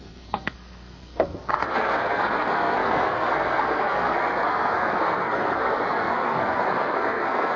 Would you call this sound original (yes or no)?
no